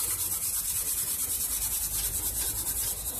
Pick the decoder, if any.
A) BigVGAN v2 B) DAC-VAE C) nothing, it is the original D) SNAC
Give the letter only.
C